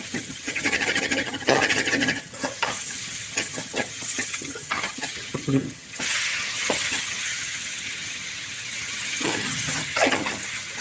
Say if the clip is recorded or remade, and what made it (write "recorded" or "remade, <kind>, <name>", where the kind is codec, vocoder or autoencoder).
remade, vocoder, HiFi-GAN